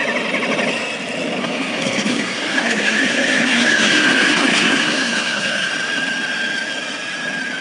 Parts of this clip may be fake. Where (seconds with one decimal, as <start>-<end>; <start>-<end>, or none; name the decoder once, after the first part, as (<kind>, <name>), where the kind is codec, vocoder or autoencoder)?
1.4-5.7 (codec, SNAC)